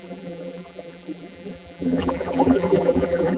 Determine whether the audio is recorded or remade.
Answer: remade